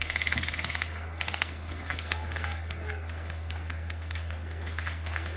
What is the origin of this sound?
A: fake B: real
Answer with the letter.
A